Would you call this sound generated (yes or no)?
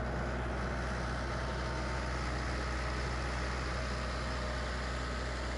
no